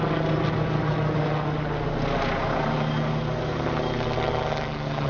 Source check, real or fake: real